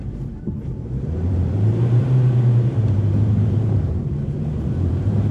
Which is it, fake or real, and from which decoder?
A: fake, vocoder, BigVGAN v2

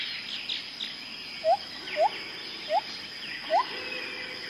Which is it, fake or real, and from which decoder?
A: real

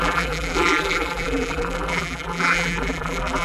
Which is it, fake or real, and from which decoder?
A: fake, vocoder, BigVGAN v2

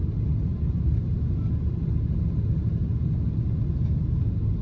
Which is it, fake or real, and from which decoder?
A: real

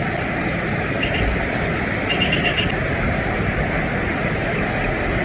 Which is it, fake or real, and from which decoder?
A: real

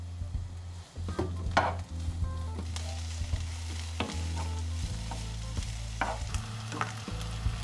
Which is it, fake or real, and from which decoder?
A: real